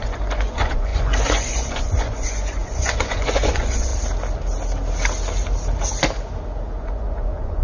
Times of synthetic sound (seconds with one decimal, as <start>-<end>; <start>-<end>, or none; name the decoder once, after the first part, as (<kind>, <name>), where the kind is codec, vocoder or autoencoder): 0.0-3.9 (vocoder, Vocos); 6.8-7.6